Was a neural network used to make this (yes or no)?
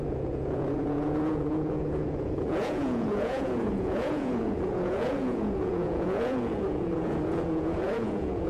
yes